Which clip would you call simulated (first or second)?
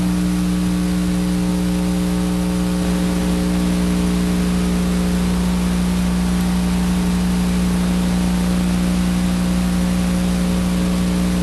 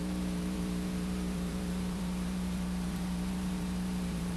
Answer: second